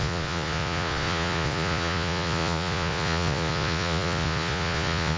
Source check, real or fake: fake